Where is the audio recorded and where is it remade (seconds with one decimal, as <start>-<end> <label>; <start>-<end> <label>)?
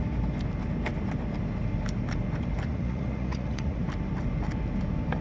0.0-2.7 recorded; 2.7-3.8 remade; 3.8-5.2 recorded